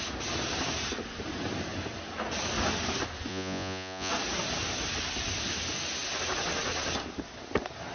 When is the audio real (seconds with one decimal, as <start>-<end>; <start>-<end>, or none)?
0.0-3.3; 4.1-7.9